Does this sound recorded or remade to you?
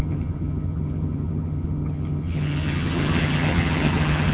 remade